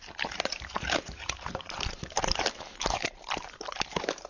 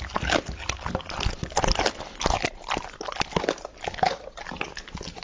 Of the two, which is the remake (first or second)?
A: first